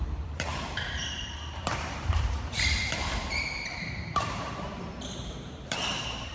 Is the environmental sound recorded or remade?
remade